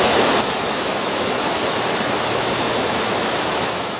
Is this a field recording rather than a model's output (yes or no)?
no